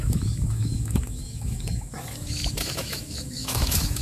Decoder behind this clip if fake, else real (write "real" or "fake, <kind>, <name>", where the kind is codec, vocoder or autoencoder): fake, autoencoder, DAC-VAE